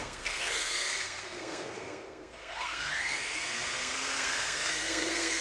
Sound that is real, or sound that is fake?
fake